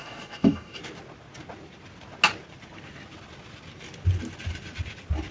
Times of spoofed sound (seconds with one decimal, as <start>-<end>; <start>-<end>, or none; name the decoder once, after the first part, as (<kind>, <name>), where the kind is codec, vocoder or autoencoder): 0.0-0.8 (codec, DAC)